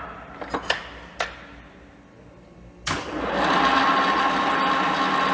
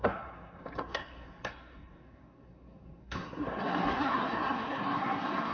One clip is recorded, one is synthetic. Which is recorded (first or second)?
first